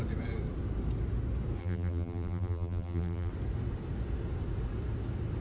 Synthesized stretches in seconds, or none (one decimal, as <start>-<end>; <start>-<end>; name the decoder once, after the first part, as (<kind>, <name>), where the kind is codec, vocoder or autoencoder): 1.6-3.3 (vocoder, BigVGAN v2)